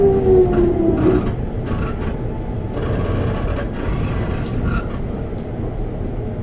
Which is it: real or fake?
real